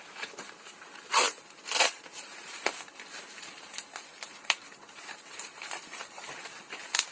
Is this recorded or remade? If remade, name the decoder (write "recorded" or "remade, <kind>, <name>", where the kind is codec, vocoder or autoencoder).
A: remade, vocoder, BigVGAN v2